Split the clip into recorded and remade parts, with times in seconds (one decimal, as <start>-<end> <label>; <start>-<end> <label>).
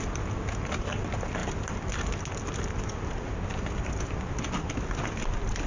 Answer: 0.0-5.7 recorded